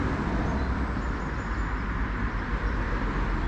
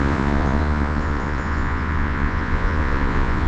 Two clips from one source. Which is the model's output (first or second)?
second